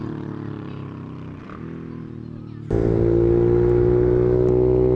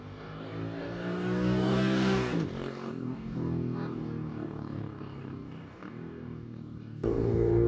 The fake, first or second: second